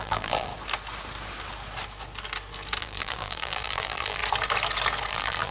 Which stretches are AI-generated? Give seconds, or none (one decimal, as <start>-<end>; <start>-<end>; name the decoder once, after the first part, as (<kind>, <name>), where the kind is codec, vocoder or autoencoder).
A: 0.0-0.5 (vocoder, BigVGAN v2); 2.8-4.2; 5.1-5.5